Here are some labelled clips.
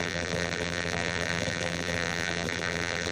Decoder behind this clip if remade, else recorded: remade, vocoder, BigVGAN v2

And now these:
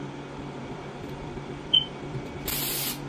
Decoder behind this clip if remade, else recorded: remade, vocoder, BigVGAN v2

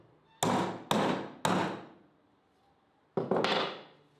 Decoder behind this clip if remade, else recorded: recorded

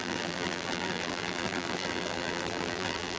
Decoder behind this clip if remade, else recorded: remade, vocoder, BigVGAN v2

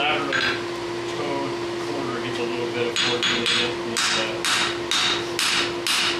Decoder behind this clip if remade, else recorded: recorded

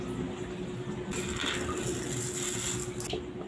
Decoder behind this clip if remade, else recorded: recorded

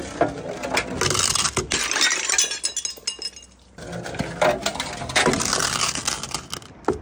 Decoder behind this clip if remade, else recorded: recorded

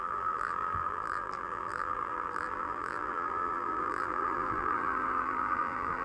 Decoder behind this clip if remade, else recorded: remade, vocoder, BigVGAN v2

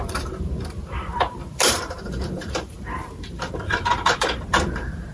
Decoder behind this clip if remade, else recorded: remade, vocoder, BigVGAN v2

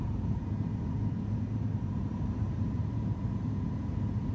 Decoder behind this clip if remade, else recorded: remade, vocoder, BigVGAN v2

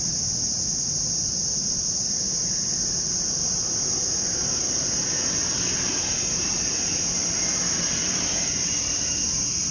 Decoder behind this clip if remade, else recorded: remade, vocoder, BigVGAN v2